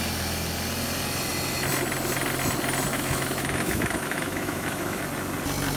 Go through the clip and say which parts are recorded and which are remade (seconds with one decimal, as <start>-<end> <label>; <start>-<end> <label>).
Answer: 0.0-2.9 recorded; 2.9-5.0 remade; 5.0-5.8 recorded